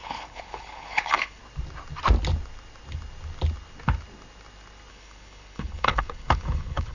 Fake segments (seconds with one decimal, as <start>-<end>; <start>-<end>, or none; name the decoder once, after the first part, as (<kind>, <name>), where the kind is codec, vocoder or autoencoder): 0.0-1.4 (codec, HILCodec); 4.9-6.9